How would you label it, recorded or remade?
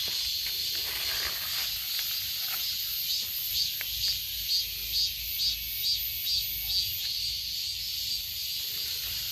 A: recorded